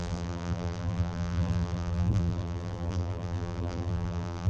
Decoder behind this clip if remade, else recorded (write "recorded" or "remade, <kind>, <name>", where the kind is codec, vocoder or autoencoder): remade, vocoder, BigVGAN v2